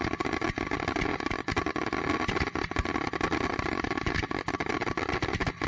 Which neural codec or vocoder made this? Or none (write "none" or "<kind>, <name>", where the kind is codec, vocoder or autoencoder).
none